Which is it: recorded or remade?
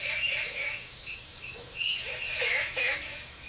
remade